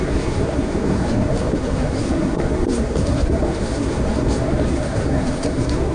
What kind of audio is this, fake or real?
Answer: fake